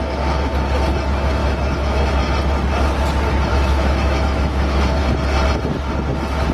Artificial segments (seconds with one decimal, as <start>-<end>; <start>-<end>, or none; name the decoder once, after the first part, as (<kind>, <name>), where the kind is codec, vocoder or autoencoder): 1.4-2.2 (autoencoder, DAC-VAE); 3.5-5.0